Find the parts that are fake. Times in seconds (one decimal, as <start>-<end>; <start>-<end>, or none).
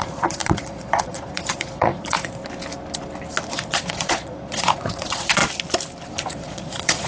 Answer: 0.0-2.4; 3.5-5.4; 6.1-7.1